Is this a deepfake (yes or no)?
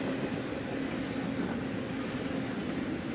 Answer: no